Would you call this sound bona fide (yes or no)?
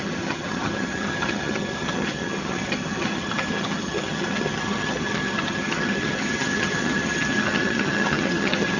no